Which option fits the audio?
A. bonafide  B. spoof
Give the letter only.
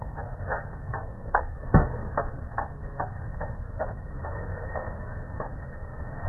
B